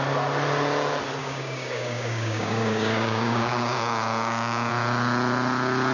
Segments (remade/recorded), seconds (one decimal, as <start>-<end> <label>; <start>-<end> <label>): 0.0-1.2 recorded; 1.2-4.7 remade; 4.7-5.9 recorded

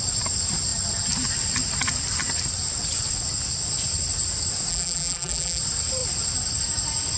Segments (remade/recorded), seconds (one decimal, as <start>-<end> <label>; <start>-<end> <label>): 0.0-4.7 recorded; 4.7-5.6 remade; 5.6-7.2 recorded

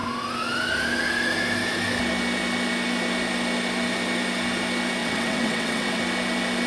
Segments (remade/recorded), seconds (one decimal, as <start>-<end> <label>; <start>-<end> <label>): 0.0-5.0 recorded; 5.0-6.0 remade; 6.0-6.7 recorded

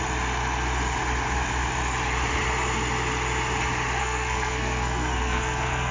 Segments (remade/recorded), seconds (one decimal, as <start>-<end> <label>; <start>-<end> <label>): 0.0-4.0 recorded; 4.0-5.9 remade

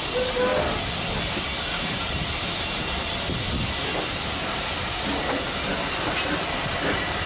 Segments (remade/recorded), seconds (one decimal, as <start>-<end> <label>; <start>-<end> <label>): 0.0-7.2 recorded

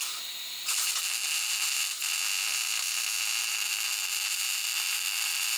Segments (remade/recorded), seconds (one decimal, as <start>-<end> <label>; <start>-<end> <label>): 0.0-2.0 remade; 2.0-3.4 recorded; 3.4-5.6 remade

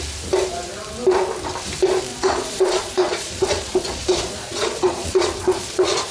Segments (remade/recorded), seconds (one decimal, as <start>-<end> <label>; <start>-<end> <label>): 0.0-2.1 recorded; 2.1-6.1 remade

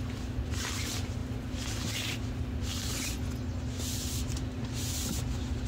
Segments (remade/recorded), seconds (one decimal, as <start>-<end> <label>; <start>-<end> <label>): 0.0-5.7 recorded